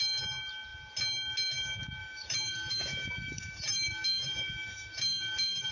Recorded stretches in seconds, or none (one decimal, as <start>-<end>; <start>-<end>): 0.0-2.0